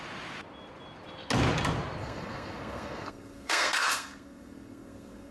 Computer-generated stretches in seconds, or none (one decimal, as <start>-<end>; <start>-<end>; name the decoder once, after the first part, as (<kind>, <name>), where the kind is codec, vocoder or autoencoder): 2.0-5.3 (codec, SNAC)

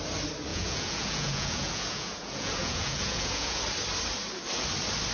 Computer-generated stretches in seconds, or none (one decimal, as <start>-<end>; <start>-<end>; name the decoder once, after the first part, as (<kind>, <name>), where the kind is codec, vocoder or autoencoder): 0.5-3.6 (vocoder, Vocos)

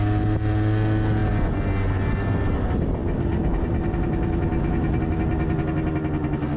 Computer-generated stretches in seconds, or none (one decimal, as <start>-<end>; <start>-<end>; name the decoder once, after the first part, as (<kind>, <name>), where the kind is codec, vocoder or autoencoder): none

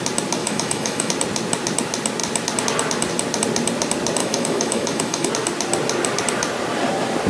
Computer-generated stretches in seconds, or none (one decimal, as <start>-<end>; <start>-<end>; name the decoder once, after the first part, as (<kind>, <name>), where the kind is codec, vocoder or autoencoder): 0.4-1.1 (autoencoder, DAC-VAE); 4.2-5.3